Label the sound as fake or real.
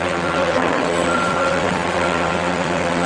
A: fake